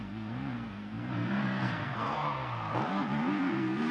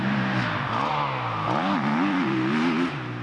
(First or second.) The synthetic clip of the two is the first